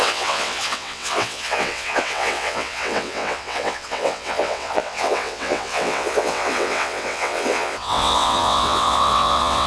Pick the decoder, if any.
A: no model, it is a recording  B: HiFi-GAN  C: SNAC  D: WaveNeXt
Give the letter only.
D